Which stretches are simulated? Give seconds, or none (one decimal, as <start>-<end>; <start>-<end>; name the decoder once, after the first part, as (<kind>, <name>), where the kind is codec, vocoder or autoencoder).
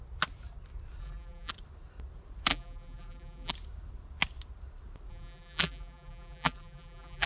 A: 1.0-1.5 (vocoder, BigVGAN v2); 2.5-3.5; 5.1-7.3